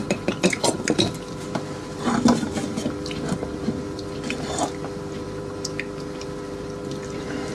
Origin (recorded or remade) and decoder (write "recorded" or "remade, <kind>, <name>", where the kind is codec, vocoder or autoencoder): remade, vocoder, BigVGAN v2